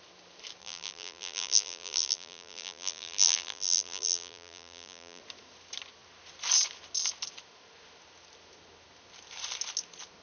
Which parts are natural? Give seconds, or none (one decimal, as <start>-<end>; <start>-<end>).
0.0-0.6; 5.2-10.2